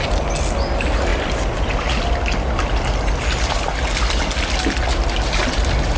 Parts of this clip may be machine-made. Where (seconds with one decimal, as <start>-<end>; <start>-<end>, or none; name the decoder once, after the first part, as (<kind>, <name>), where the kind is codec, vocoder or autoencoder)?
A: none